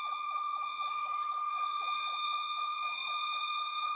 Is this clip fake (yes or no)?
yes